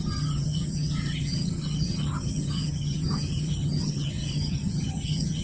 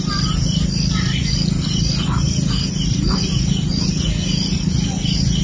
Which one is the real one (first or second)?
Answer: second